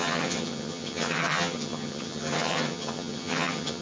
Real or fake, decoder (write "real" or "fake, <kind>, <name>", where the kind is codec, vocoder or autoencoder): fake, vocoder, HiFi-GAN